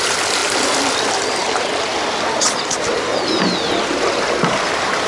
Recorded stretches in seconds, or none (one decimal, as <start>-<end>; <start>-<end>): 1.4-4.5